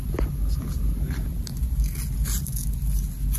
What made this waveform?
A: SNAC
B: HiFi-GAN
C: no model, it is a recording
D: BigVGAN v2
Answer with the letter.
C